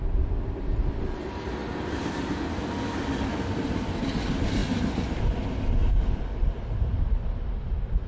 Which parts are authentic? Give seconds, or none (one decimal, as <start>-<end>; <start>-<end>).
0.0-8.1